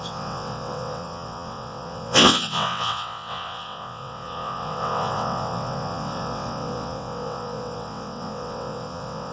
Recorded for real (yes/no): no